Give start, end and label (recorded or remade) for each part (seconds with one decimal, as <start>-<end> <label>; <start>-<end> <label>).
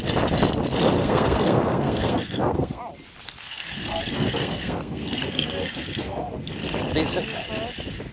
0.0-1.0 recorded; 1.0-2.8 remade; 2.8-3.4 recorded; 3.4-6.5 remade; 6.5-8.1 recorded